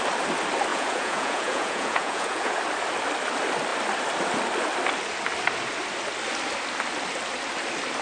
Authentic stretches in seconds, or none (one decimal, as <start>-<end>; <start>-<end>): 0.0-0.7; 2.6-8.0